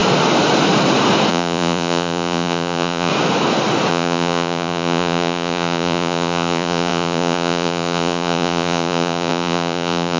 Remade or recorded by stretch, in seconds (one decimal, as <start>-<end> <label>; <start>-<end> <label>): 0.0-1.3 recorded; 1.3-3.1 remade; 3.1-3.9 recorded; 3.9-10.2 remade